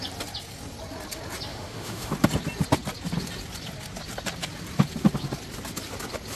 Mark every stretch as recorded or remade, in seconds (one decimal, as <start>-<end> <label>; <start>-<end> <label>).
0.0-1.5 recorded; 1.5-2.1 remade; 2.1-6.4 recorded